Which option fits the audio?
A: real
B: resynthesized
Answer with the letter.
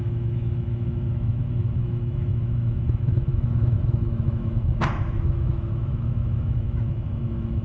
B